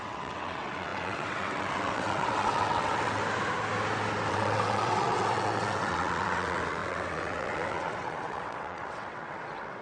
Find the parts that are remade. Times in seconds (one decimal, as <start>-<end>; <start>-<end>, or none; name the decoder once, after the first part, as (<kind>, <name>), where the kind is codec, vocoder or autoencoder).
0.0-3.2 (vocoder, WaveNeXt); 4.3-9.8